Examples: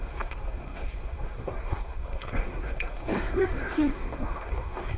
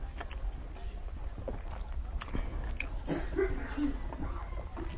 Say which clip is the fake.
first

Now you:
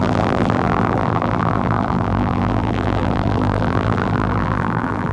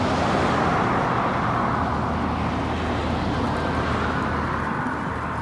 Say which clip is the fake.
first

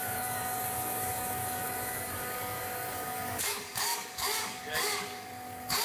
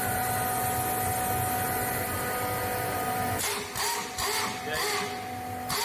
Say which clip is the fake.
first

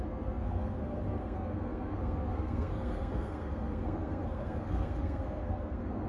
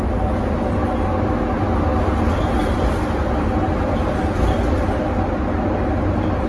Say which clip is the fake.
first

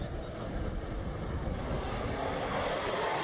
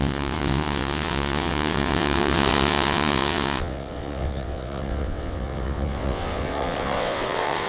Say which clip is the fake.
second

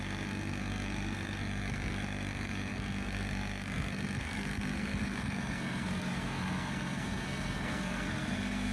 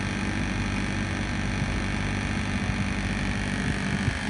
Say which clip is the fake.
first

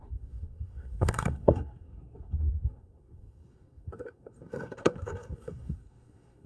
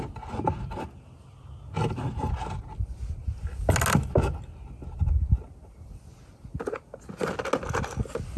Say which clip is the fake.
first